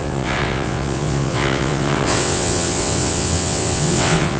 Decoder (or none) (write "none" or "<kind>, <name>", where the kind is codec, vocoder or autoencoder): vocoder, WaveNeXt